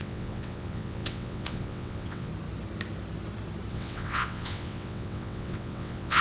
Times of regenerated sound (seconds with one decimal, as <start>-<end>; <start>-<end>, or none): 0.0-2.3; 3.7-6.2